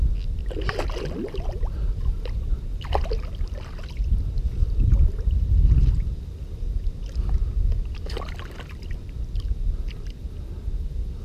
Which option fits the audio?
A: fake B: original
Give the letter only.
B